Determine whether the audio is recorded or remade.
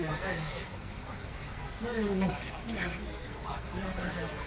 remade